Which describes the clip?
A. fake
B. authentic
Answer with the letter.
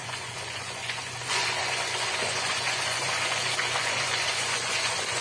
A